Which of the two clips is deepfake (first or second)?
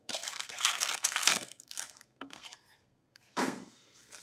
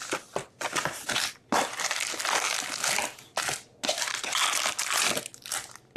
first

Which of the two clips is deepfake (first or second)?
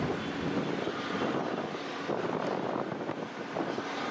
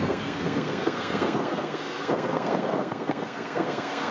second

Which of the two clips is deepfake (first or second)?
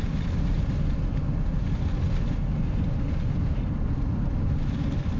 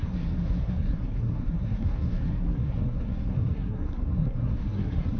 second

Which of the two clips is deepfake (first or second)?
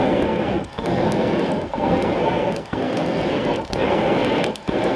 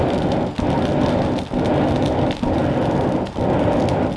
first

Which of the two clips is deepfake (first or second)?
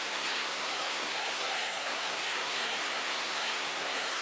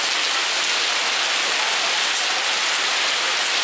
first